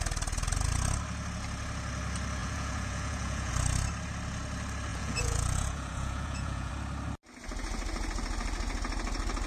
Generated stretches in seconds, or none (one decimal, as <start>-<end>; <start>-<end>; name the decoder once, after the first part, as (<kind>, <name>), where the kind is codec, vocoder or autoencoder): 2.4-3.5 (vocoder, Vocos); 4.9-6.7